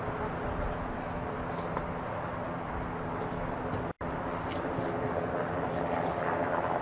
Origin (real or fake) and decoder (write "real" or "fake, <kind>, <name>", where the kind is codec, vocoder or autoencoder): real